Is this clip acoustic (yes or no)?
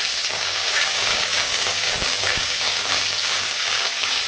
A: no